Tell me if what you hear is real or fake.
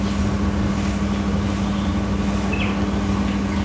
real